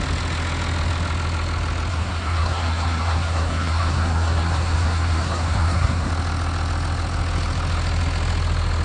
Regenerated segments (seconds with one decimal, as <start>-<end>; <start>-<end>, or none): 1.9-6.1